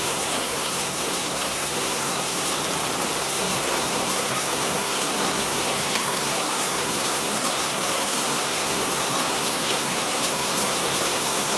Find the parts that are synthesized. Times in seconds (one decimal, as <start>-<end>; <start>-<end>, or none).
0.0-2.6; 3.2-11.6